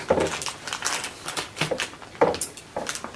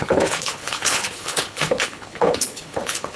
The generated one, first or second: second